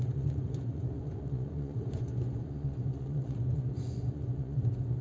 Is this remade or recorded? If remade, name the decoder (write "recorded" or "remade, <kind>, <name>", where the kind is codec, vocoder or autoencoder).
remade, vocoder, Vocos